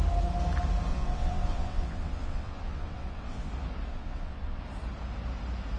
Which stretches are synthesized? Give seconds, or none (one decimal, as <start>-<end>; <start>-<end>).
0.9-3.5; 3.9-4.6